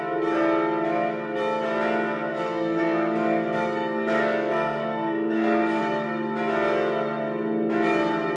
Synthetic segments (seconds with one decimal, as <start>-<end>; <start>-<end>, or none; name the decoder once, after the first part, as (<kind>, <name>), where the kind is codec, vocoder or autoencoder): 2.3-5.8 (codec, SNAC)